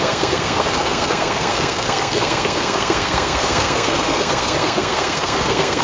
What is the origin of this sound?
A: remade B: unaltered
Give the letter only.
A